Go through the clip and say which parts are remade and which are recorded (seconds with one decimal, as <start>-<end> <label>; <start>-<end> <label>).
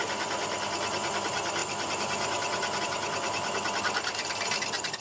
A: 0.0-5.0 recorded